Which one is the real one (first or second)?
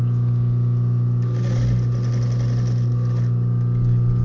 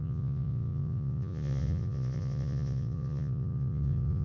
first